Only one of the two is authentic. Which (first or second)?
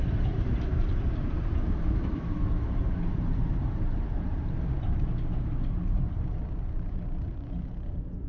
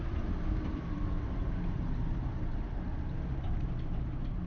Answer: second